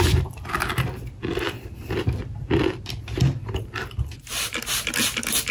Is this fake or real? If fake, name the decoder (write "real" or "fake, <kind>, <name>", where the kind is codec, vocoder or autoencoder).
real